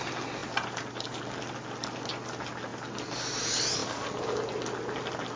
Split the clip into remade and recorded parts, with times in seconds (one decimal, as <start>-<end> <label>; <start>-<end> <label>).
0.0-5.4 recorded